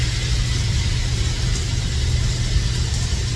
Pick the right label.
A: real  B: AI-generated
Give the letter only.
A